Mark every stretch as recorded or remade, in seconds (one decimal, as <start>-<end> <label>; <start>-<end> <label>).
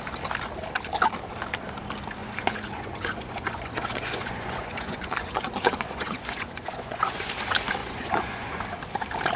0.0-2.2 recorded; 2.2-7.3 remade; 7.3-7.8 recorded; 7.8-8.6 remade; 8.6-9.4 recorded